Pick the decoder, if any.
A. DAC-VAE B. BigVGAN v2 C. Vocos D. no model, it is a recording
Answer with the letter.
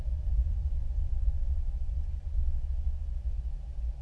D